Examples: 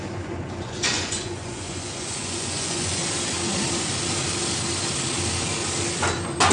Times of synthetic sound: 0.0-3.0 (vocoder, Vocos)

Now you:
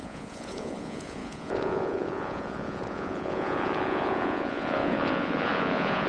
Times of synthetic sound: 0.0-6.1 (vocoder, Vocos)

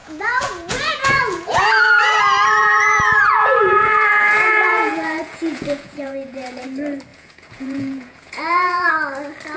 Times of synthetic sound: 0.0-2.2 (vocoder, Vocos); 2.6-6.6; 7.1-8.9

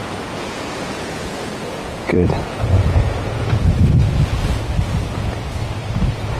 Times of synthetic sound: 0.0-3.8 (vocoder, Vocos)

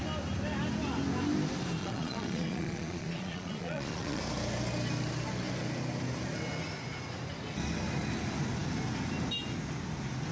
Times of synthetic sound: 1.8-4.2 (vocoder, Vocos)

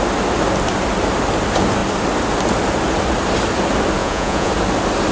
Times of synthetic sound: 4.0-4.5 (vocoder, Vocos)

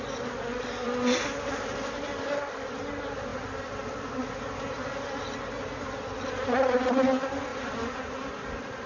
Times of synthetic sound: none

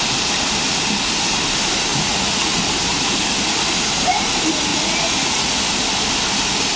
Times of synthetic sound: 1.9-2.6 (vocoder, Vocos); 4.7-5.6